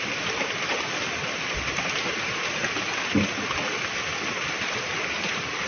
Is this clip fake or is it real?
real